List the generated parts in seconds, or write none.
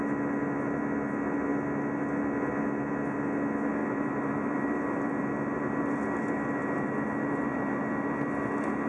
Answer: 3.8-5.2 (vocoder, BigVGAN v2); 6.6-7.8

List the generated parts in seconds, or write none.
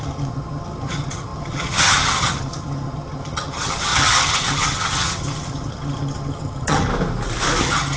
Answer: 0.0-6.9 (vocoder, HiFi-GAN); 7.6-8.0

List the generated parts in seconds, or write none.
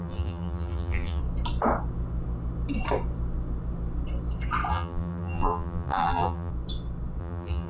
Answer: 0.0-1.2 (vocoder, BigVGAN v2); 4.7-6.5; 7.2-7.7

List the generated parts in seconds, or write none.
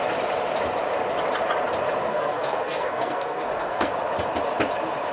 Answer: 2.1-3.9 (codec, SNAC)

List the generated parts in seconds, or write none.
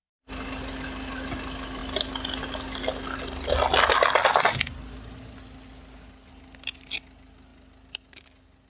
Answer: none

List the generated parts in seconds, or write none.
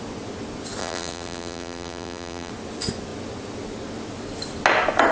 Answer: 0.8-2.5 (vocoder, BigVGAN v2)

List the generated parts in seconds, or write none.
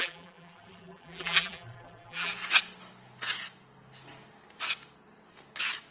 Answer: 0.0-2.3 (vocoder, BigVGAN v2)